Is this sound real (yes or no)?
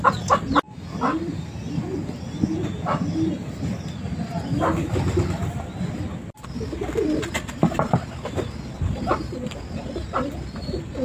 yes